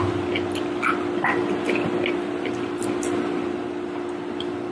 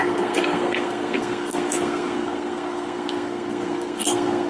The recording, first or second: first